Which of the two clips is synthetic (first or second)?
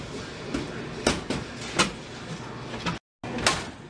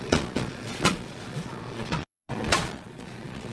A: second